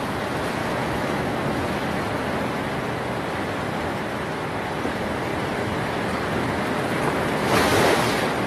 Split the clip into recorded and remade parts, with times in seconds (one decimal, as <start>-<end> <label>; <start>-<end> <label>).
0.0-0.6 recorded; 0.6-1.9 remade; 1.9-7.4 recorded; 7.4-8.0 remade; 8.0-8.5 recorded